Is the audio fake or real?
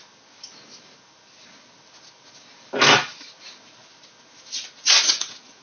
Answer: real